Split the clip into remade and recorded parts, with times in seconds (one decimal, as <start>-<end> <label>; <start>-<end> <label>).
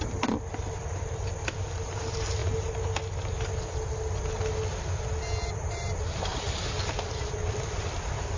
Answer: 0.0-2.4 remade; 2.4-5.5 recorded; 5.5-8.4 remade